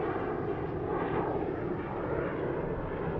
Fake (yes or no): no